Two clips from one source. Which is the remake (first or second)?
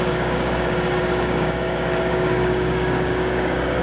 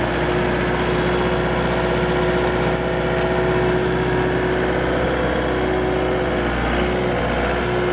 first